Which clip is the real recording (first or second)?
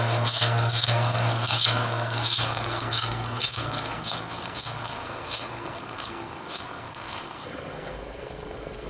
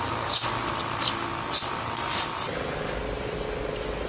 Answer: second